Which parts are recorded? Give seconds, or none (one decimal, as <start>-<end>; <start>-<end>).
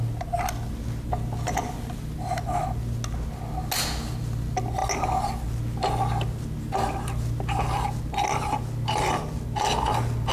0.0-10.3